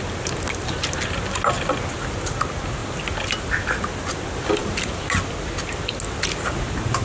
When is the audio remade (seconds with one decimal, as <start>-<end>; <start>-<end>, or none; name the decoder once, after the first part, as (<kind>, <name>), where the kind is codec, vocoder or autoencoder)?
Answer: none